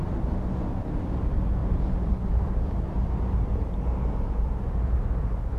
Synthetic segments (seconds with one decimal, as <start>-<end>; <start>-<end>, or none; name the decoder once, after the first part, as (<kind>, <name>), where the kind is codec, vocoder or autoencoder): 1.6-5.0 (vocoder, BigVGAN v2)